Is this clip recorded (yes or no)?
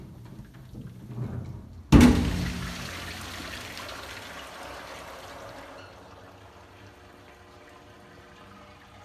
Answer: yes